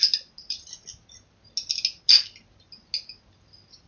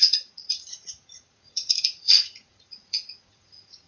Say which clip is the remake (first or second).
second